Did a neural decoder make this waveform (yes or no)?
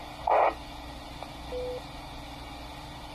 no